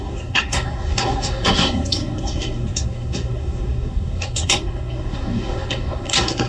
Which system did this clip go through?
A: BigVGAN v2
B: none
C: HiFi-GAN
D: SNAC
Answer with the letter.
D